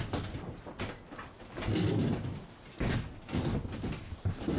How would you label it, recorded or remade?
recorded